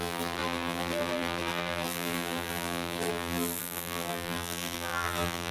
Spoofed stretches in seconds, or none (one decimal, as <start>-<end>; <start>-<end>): 0.0-5.5